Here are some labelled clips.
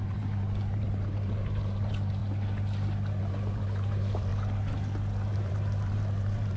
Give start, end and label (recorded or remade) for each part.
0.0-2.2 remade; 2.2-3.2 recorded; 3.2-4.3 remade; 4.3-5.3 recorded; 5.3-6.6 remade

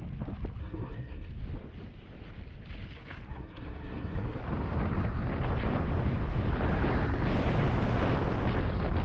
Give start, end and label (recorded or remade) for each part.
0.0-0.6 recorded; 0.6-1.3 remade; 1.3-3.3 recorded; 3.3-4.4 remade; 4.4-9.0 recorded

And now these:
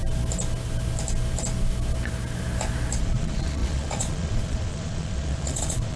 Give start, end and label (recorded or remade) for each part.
0.0-3.0 recorded; 3.0-6.0 remade